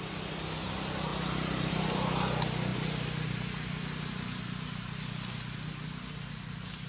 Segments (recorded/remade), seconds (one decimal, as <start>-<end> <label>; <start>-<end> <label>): 0.0-6.9 recorded